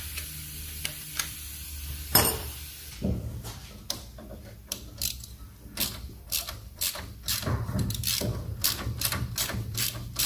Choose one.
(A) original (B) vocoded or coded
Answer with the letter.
B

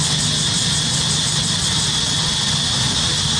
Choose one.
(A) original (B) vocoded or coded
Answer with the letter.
A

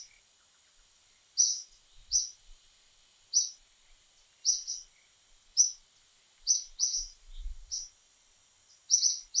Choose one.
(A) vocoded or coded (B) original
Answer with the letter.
B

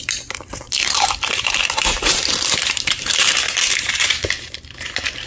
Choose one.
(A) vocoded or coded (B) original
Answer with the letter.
A